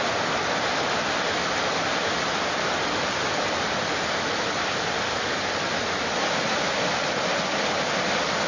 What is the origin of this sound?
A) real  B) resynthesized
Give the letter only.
A